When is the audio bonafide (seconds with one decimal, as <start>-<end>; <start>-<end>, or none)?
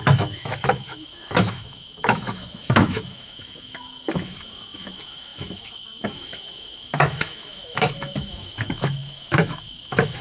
none